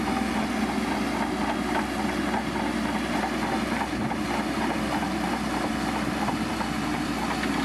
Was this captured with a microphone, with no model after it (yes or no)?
yes